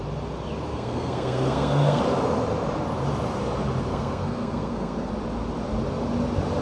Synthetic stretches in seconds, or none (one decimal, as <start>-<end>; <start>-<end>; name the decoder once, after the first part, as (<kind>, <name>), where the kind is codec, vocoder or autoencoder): 0.7-2.0 (codec, SNAC); 3.9-5.1